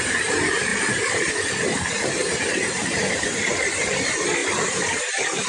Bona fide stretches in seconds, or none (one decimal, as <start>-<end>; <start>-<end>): 0.0-0.7; 1.3-2.2; 3.6-4.4; 5.0-5.5